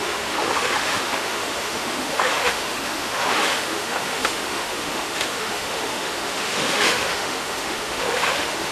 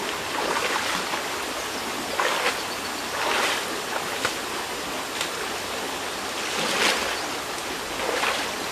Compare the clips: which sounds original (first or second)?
second